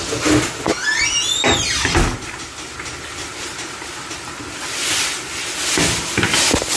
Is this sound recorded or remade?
recorded